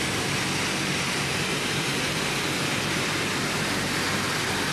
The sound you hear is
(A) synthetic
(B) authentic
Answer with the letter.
A